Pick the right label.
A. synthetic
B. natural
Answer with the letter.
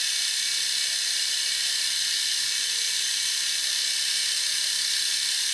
B